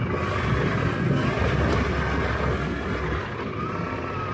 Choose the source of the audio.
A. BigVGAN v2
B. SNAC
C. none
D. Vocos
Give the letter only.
C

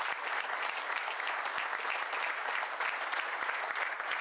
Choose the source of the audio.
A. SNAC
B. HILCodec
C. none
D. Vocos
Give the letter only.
C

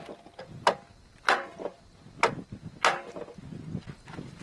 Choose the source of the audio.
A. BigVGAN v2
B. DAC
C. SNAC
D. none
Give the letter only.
D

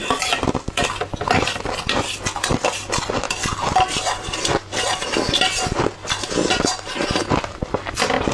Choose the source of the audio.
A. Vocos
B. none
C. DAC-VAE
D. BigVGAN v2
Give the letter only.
B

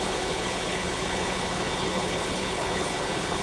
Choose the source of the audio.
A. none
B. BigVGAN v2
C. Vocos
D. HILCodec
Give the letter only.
D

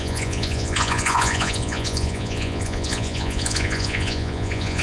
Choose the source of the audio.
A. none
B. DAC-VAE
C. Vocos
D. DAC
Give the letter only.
C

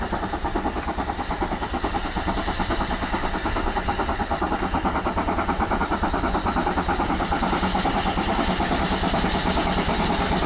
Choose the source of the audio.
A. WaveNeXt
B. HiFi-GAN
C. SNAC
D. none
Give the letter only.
D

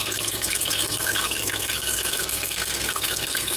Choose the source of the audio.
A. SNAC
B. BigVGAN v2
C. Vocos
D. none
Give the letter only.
A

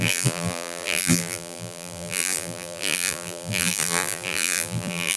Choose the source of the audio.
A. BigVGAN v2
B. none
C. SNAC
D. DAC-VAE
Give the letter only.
A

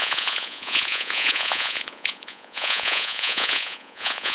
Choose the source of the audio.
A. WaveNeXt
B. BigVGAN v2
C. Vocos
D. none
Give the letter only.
C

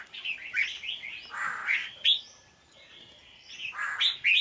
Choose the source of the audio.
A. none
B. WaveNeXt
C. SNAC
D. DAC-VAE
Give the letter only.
A